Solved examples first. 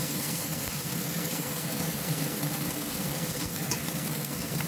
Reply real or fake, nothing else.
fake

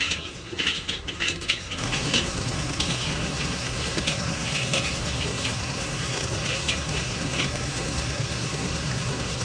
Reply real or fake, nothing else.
fake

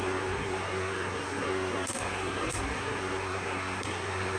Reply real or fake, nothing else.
fake